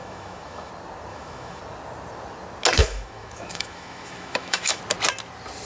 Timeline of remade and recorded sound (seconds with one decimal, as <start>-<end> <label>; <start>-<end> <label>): 0.0-0.7 remade; 0.7-1.1 recorded; 1.1-1.6 remade; 1.6-2.8 recorded; 2.8-4.8 remade; 4.8-5.7 recorded